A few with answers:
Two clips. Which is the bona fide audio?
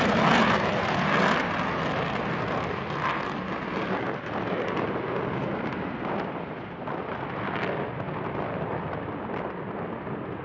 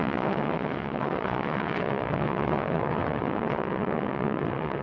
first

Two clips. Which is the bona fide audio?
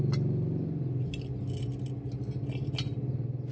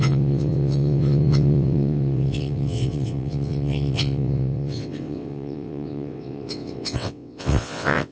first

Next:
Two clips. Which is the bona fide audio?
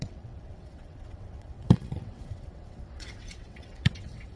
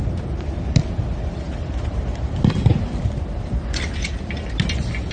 second